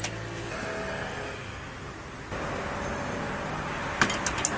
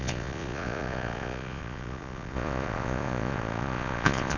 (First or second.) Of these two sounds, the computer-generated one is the second